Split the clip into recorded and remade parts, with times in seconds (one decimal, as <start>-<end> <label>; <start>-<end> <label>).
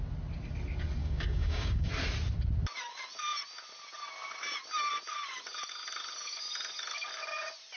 0.0-1.0 recorded; 1.0-1.9 remade; 1.9-7.8 recorded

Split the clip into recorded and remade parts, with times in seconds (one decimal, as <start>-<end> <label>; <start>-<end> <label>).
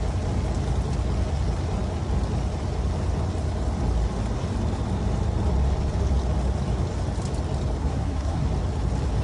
0.0-7.8 recorded; 7.8-8.5 remade; 8.5-9.2 recorded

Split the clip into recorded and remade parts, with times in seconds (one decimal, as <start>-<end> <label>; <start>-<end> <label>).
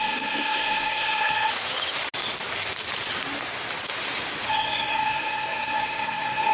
0.0-1.5 remade; 1.5-4.5 recorded; 4.5-6.5 remade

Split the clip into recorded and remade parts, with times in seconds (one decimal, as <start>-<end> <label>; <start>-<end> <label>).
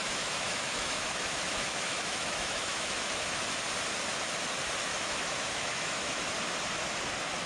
0.0-3.4 remade; 3.4-4.9 recorded; 4.9-6.2 remade; 6.2-7.5 recorded